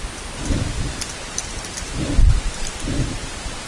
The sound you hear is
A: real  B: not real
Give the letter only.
A